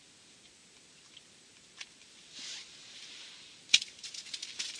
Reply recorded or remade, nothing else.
recorded